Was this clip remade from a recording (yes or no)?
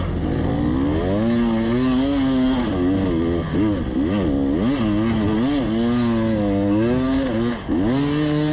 no